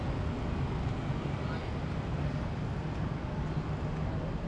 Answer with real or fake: real